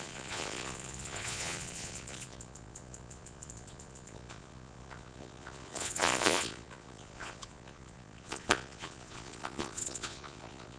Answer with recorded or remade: remade